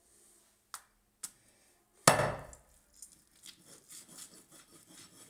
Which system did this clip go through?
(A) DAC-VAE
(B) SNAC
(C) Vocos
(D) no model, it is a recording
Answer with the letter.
D